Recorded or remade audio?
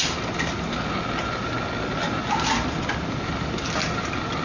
recorded